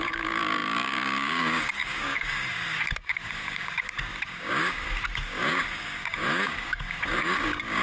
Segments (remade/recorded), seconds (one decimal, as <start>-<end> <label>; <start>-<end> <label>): 0.0-7.8 remade